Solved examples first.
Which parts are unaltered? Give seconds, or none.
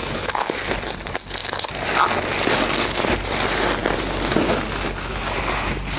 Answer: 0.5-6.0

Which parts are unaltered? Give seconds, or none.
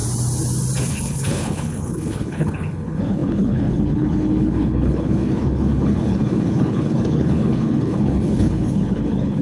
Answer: 0.0-0.9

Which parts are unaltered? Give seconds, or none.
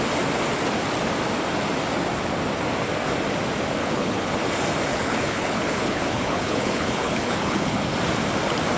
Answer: 0.0-3.8; 4.3-4.9; 7.8-8.8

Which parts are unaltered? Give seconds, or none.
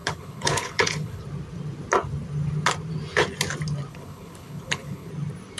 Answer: 1.2-3.9; 5.1-5.6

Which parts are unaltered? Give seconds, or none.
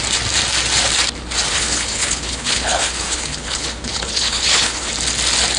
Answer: 0.0-1.5; 4.9-5.6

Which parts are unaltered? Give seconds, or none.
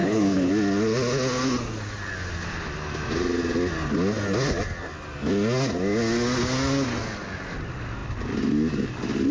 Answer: 0.5-9.3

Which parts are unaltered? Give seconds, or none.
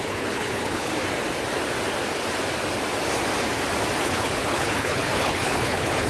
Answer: 0.9-4.0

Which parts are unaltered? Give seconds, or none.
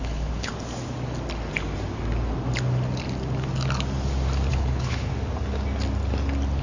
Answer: 0.5-4.5; 5.1-6.6